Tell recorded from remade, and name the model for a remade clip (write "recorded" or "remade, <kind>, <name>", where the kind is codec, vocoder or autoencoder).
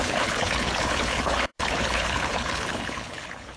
remade, codec, HILCodec